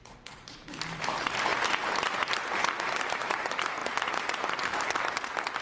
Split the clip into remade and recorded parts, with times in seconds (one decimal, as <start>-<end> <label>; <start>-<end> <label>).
0.0-5.6 remade